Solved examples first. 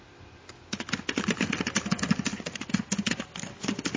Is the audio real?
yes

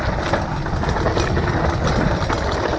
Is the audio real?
yes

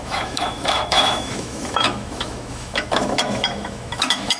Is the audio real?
no